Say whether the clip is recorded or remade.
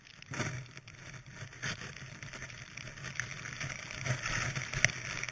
recorded